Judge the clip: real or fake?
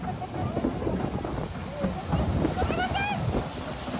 real